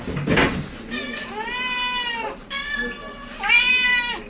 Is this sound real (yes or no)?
yes